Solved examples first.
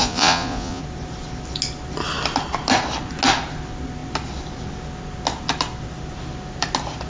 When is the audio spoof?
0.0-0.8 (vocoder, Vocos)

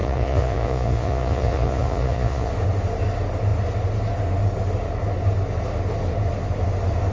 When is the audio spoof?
0.0-2.5 (vocoder, Vocos)